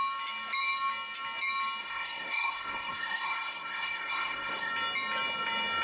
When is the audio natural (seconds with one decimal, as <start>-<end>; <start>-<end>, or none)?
0.0-1.8; 4.7-5.8